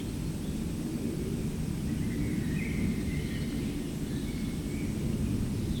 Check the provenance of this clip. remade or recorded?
recorded